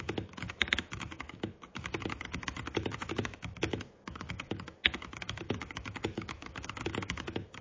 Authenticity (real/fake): fake